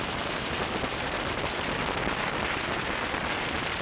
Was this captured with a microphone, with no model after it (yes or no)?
yes